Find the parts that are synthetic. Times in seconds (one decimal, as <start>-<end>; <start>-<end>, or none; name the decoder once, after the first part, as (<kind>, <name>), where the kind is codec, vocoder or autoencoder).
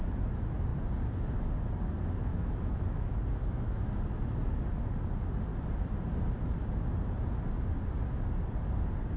2.3-3.9 (autoencoder, DAC-VAE)